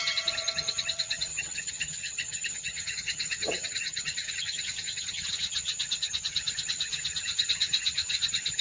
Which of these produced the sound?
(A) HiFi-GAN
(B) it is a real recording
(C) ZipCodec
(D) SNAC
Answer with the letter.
A